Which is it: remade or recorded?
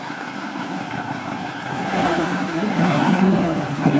remade